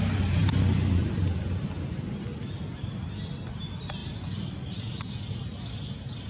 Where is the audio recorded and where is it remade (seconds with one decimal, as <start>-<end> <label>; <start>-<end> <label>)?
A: 0.0-6.3 recorded